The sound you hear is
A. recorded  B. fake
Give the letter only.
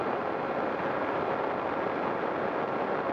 A